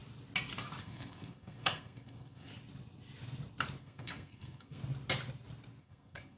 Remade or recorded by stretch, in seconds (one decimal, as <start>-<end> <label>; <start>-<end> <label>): 0.0-0.8 recorded; 0.8-2.5 remade; 2.5-3.8 recorded; 3.8-4.8 remade; 4.8-5.8 recorded; 5.8-6.4 remade